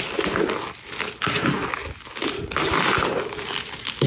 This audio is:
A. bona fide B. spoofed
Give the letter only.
A